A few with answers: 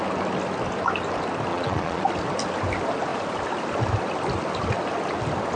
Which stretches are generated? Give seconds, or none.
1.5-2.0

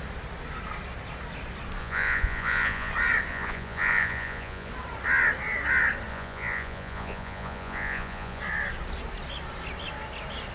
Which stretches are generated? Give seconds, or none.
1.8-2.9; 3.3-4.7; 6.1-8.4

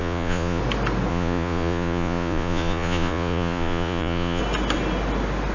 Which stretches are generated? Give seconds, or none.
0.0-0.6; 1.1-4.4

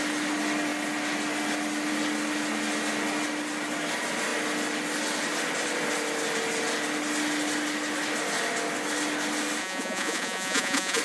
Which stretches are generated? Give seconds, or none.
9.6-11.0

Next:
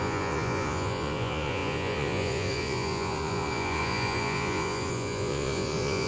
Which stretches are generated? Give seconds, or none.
0.0-6.1

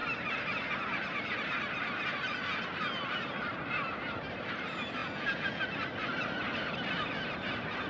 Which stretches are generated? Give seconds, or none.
5.0-5.6

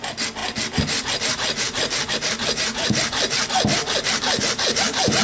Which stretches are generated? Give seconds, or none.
none